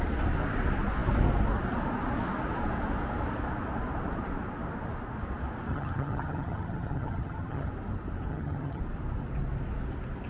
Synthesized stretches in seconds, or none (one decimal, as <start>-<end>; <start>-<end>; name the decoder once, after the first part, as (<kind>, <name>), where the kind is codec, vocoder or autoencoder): 5.7-7.7 (vocoder, HiFi-GAN); 8.3-8.8